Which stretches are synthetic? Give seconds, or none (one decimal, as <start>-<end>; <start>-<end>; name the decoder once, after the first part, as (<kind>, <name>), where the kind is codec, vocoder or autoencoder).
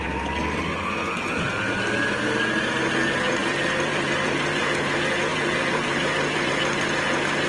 3.4-4.6 (vocoder, BigVGAN v2); 5.3-6.5